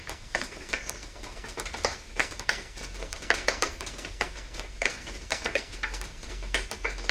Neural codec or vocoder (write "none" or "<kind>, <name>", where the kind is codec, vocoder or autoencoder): codec, SNAC